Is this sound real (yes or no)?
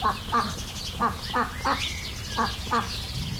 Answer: yes